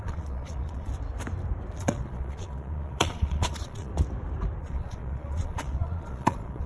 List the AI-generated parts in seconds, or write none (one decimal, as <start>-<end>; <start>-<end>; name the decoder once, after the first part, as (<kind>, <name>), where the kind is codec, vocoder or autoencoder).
0.0-0.9 (vocoder, Vocos); 1.8-3.9; 4.6-6.7